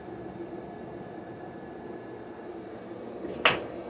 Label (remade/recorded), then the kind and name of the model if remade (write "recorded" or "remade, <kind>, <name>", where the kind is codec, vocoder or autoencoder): recorded